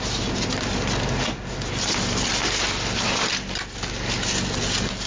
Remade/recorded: recorded